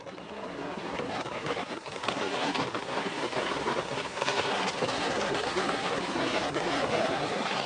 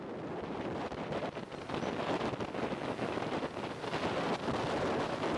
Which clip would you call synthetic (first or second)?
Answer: first